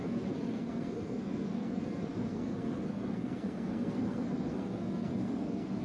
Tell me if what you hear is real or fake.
fake